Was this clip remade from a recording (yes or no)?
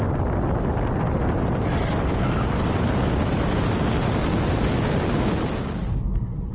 no